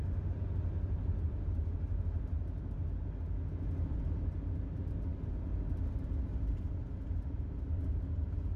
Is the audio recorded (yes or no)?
yes